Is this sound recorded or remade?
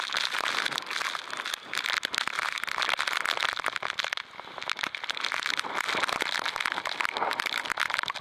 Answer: recorded